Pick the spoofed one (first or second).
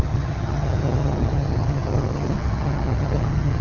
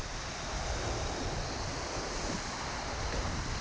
first